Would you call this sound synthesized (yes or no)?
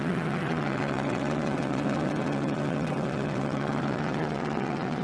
yes